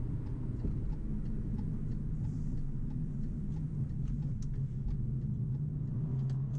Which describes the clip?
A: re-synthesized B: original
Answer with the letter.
B